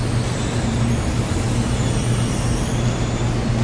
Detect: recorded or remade recorded